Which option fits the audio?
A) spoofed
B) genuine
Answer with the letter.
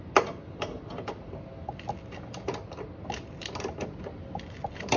B